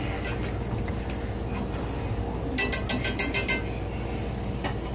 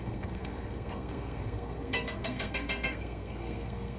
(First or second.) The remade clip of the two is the second